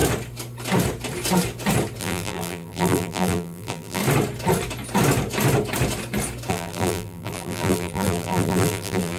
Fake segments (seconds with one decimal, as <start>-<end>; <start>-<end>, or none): 2.0-4.0; 6.5-9.2